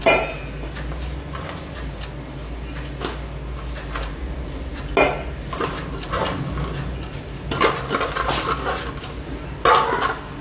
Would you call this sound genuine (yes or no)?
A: yes